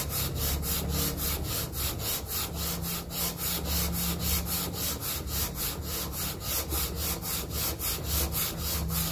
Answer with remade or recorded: recorded